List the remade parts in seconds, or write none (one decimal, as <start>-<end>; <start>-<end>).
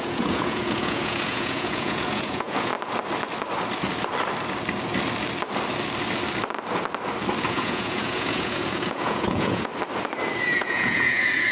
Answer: 0.0-2.7; 7.5-9.7; 10.4-11.5